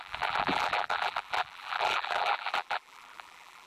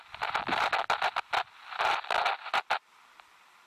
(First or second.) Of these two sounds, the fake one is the first